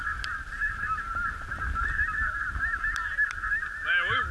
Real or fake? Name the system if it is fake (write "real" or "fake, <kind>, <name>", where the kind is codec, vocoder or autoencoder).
real